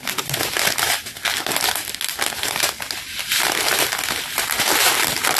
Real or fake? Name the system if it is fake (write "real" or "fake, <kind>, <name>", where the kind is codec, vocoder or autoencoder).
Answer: real